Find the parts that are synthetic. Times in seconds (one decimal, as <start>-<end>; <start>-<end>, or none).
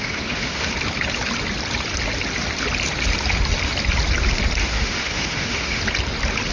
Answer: 0.0-0.7; 4.6-5.8